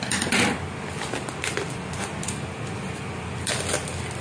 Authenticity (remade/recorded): recorded